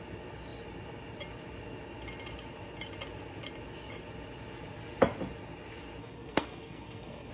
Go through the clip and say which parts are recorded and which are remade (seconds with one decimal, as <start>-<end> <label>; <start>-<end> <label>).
0.0-6.0 recorded; 6.0-7.3 remade